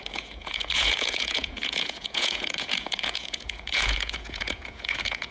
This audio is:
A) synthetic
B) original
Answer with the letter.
A